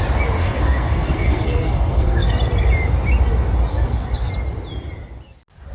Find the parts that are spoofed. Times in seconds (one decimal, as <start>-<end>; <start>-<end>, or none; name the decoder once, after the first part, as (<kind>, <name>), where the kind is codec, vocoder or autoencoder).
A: 0.4-2.3 (codec, SNAC); 3.7-4.3